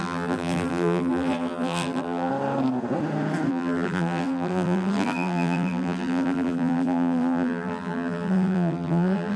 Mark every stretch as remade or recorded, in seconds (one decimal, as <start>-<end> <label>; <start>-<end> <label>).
0.0-2.3 remade; 2.3-3.5 recorded; 3.5-9.4 remade